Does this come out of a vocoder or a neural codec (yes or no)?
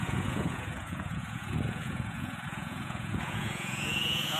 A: yes